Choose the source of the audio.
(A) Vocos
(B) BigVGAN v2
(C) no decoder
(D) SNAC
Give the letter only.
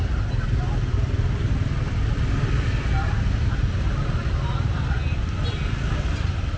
C